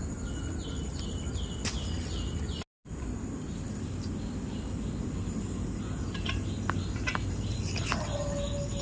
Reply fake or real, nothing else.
real